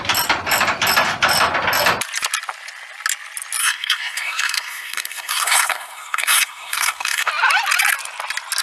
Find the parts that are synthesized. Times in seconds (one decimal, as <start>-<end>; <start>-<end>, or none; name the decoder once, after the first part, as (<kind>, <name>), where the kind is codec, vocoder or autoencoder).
3.6-7.3 (codec, SNAC)